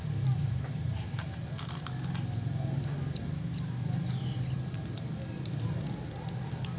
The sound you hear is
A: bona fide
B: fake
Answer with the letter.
A